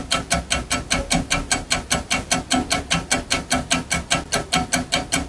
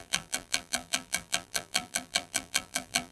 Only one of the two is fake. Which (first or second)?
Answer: second